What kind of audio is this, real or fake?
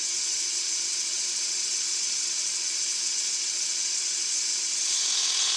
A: fake